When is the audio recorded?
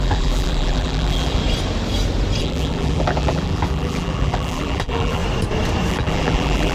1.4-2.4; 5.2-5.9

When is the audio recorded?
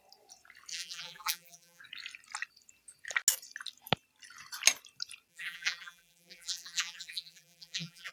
0.0-0.7; 1.8-5.3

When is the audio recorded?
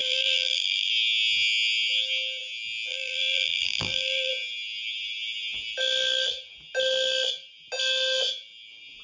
0.9-2.9; 4.3-9.0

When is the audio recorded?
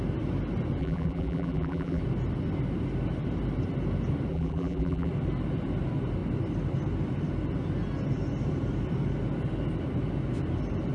0.0-0.8; 2.0-4.3; 5.1-10.9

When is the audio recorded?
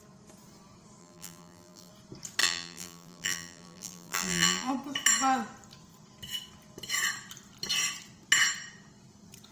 0.0-1.0; 1.9-2.4; 4.7-9.5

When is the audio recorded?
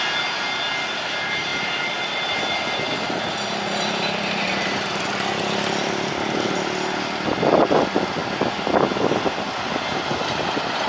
0.0-1.5; 6.1-10.9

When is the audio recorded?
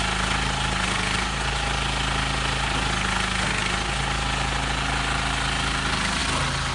0.0-6.7